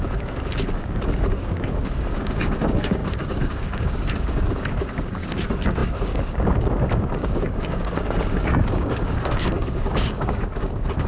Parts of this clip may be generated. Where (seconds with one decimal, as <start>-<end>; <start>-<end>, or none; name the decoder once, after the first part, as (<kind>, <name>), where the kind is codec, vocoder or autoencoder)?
0.0-11.1 (codec, DAC)